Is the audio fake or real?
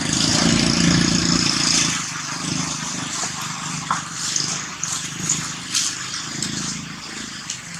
real